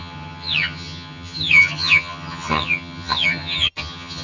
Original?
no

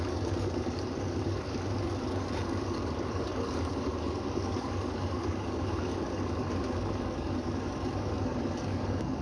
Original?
no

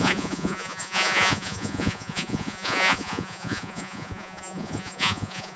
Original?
no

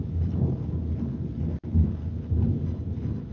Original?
yes